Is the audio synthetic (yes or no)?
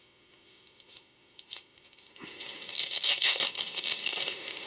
yes